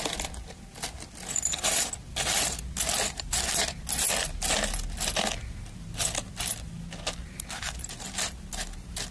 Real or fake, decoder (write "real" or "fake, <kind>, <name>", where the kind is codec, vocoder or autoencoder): real